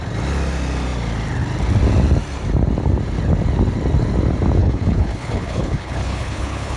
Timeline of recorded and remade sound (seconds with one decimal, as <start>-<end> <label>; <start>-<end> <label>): 0.0-4.6 recorded; 4.6-6.8 remade